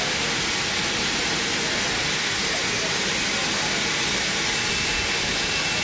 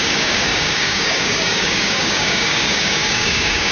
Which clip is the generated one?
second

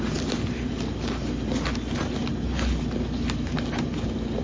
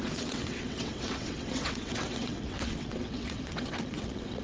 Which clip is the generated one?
second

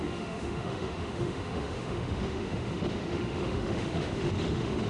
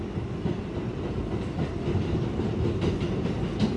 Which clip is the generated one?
first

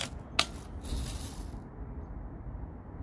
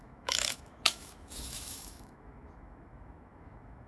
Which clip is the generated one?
second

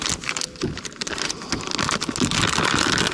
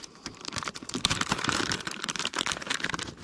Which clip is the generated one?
second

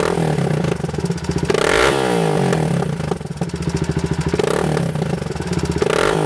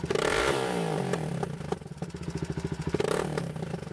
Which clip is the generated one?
second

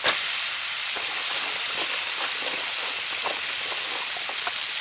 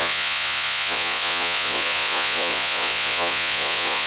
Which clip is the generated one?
second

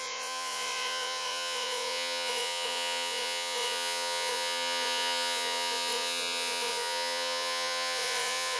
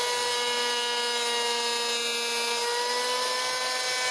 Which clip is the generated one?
first